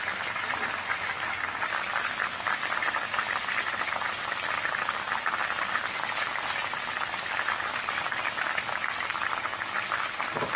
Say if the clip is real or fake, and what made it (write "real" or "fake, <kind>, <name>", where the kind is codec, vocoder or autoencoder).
real